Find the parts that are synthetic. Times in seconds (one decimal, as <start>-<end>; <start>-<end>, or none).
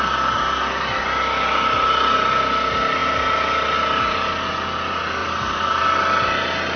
5.2-5.8